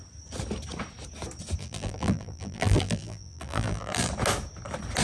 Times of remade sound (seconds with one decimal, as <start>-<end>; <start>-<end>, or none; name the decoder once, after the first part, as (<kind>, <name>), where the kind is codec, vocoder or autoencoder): 1.6-4.1 (vocoder, BigVGAN v2)